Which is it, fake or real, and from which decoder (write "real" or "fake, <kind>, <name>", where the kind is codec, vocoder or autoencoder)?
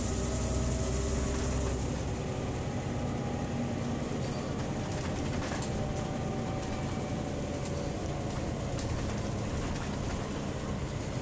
real